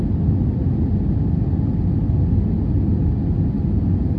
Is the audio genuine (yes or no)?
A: yes